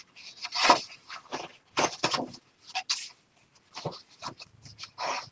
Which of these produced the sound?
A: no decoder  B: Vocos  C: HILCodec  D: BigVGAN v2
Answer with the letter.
A